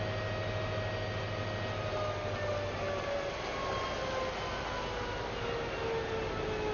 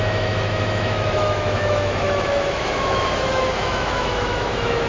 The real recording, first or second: first